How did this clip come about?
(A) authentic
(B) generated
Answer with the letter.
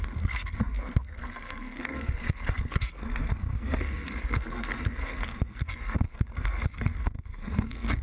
B